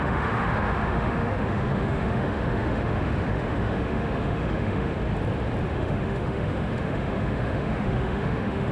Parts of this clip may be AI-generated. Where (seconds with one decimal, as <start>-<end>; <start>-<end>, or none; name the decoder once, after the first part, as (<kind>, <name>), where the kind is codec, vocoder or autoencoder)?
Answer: 0.0-4.9 (autoencoder, DAC-VAE); 5.7-8.7